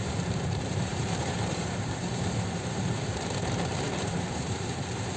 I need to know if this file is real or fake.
fake